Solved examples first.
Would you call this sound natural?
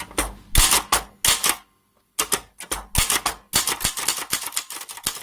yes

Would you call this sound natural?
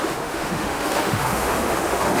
no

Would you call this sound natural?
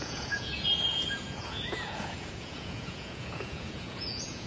no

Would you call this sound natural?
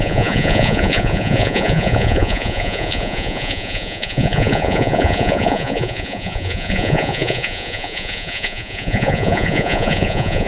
no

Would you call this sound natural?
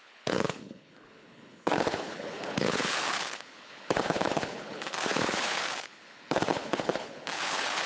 no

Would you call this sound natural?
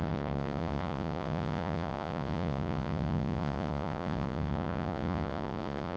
no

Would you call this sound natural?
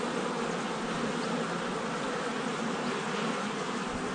yes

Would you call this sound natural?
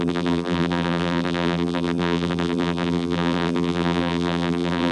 no